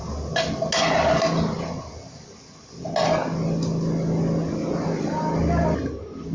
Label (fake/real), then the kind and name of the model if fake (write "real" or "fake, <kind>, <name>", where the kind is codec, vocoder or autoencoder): real